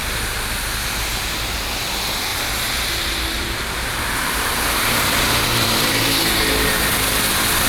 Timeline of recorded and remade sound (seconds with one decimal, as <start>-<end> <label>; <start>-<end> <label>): 0.0-1.7 remade; 1.7-2.3 recorded; 2.3-6.1 remade; 6.1-7.7 recorded